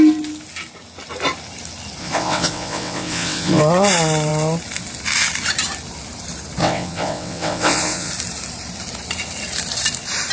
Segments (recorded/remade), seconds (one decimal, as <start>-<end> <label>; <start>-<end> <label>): 0.0-2.0 recorded; 2.0-3.6 remade; 3.6-6.6 recorded; 6.6-8.1 remade; 8.1-10.3 recorded

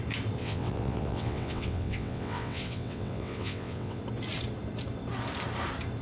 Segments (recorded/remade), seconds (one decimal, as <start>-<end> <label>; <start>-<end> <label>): 0.0-0.4 recorded; 0.4-4.0 remade; 4.0-6.0 recorded